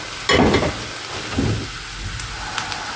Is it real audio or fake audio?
real